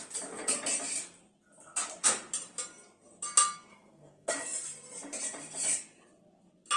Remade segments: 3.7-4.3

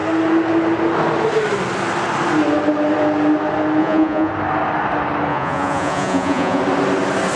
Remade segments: 3.8-4.3; 5.3-6.6

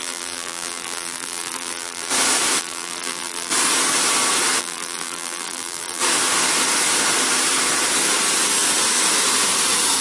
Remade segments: 0.0-2.1; 2.6-3.5; 4.6-6.0

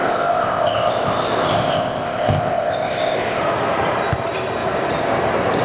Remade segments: 0.0-3.4

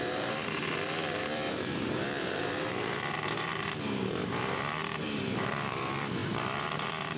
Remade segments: 0.0-0.6; 1.2-7.2

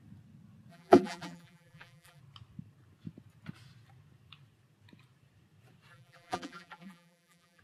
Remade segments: 0.7-2.2; 5.9-7.6

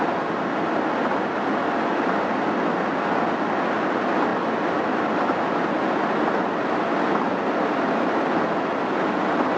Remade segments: none